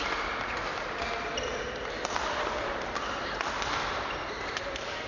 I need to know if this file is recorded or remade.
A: recorded